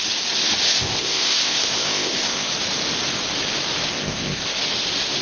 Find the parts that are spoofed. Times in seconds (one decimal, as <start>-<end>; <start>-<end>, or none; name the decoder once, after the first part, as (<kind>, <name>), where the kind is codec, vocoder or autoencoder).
0.6-2.5 (codec, ZipCodec); 3.9-4.6